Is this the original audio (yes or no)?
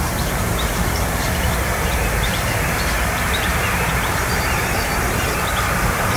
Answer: no